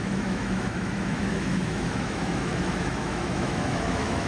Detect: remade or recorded remade